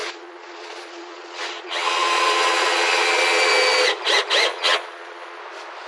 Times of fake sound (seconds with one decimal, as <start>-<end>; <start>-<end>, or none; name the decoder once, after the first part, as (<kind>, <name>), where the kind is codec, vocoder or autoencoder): 0.0-3.5 (vocoder, Vocos); 4.5-5.4

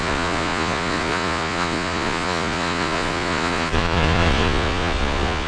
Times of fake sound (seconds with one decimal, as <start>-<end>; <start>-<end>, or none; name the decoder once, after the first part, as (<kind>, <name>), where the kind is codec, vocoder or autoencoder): 0.0-5.5 (vocoder, Vocos)

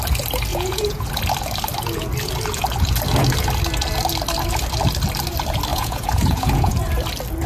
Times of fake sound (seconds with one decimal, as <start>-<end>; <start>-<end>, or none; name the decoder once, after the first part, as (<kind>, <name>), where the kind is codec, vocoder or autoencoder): 0.5-1.1 (vocoder, Vocos); 5.7-6.8

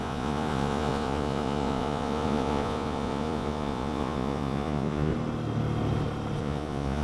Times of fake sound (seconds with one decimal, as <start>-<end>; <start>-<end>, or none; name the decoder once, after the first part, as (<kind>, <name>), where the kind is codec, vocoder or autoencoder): 0.0-5.1 (vocoder, Vocos); 6.4-7.0

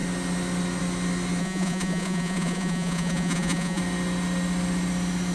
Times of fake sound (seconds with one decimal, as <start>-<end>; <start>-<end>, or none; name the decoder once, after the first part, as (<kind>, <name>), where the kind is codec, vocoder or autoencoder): 1.4-3.8 (vocoder, Vocos)